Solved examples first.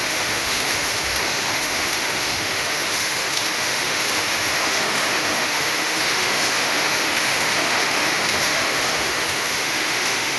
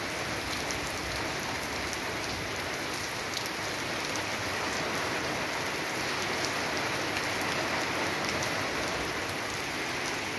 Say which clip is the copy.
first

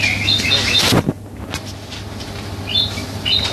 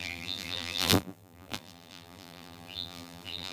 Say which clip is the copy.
second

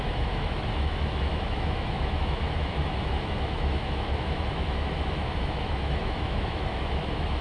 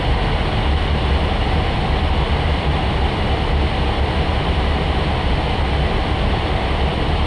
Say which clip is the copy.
first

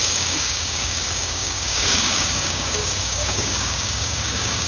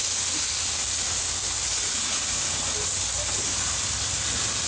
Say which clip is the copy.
first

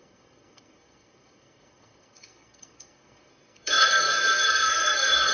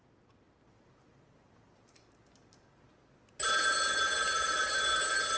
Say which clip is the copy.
first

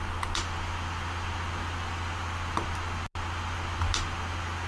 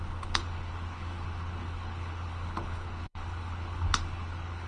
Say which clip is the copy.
second